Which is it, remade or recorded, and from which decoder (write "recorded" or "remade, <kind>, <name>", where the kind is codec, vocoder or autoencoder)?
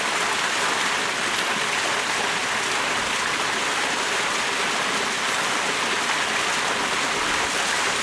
recorded